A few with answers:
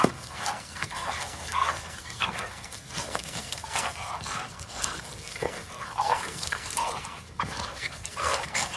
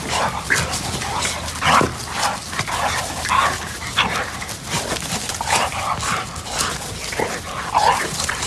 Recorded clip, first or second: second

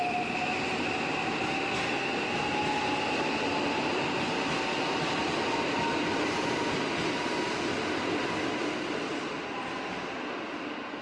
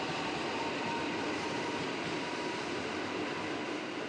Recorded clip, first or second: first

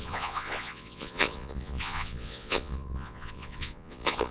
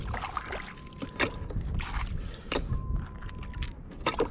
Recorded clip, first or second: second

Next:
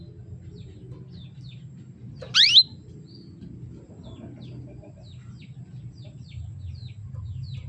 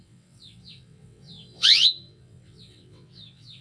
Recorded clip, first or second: first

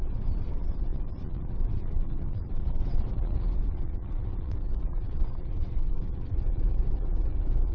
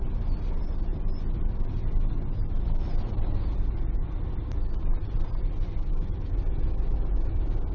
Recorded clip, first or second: second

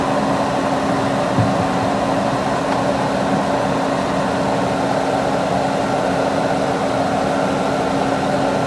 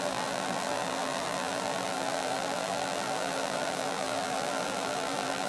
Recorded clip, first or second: first